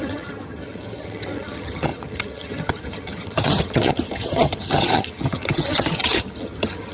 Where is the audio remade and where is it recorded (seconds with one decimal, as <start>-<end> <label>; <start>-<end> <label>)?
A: 0.0-6.9 remade